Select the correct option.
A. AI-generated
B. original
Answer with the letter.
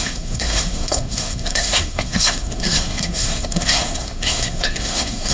A